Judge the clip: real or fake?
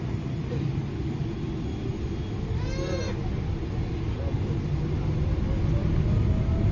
real